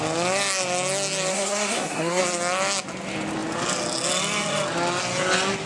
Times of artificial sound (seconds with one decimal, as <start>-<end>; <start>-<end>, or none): 1.3-2.2